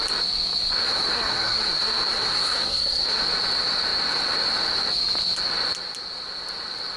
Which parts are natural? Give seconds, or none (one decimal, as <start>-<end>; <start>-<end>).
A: 0.0-0.8; 3.2-7.0